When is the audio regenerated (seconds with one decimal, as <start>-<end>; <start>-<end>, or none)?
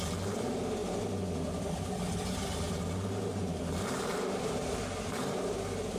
3.3-5.4